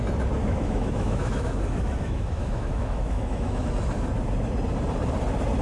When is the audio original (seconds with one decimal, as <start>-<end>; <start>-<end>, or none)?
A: 0.0-0.4; 3.7-5.6